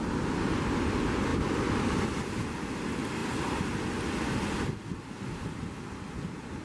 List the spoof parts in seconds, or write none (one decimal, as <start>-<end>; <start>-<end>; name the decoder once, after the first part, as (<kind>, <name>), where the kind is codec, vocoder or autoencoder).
none